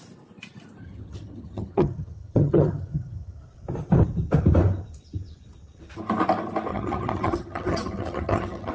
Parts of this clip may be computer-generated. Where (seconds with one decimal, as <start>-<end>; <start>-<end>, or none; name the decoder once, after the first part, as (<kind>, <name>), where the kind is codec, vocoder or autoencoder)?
0.8-3.4 (vocoder, HiFi-GAN); 6.7-8.7